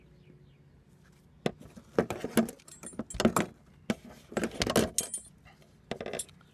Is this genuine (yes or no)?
yes